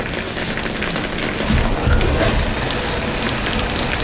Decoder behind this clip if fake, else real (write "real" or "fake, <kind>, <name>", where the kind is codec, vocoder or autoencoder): real